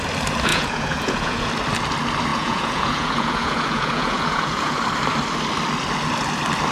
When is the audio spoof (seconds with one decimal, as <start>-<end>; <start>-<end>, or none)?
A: 0.5-1.5; 2.3-4.8